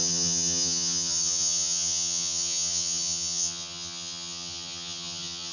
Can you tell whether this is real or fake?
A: fake